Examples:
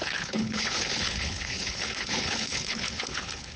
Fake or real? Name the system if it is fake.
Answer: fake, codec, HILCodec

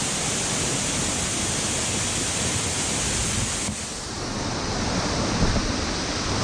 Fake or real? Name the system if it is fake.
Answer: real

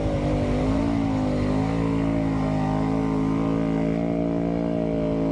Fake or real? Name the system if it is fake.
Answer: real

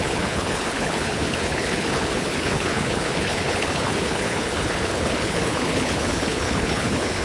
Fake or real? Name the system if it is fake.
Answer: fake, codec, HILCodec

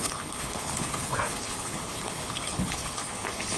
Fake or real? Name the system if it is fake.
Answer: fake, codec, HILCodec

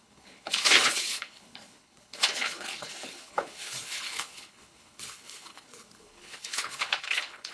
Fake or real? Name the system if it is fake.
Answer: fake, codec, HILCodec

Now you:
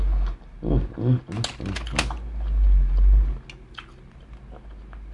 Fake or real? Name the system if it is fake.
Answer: real